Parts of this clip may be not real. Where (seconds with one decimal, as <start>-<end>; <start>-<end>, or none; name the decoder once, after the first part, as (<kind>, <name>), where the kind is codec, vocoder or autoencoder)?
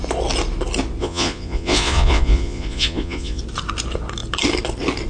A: 1.0-3.4 (vocoder, Vocos)